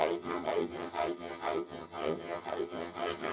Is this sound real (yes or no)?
no